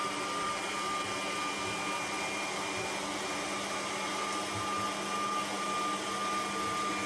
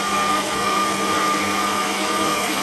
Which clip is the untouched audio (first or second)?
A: first